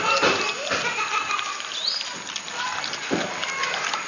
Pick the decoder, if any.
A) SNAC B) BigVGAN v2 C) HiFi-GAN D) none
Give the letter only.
D